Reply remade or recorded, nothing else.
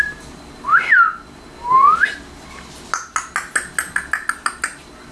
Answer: recorded